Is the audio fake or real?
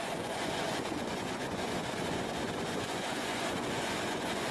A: fake